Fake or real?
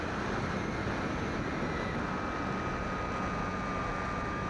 real